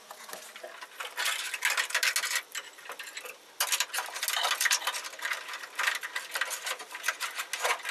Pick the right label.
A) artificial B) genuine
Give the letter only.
B